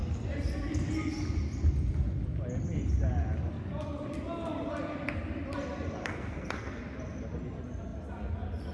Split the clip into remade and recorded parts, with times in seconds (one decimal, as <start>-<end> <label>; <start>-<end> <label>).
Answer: 0.0-6.0 recorded; 6.0-6.8 remade; 6.8-8.7 recorded